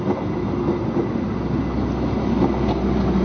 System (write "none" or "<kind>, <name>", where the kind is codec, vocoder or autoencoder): none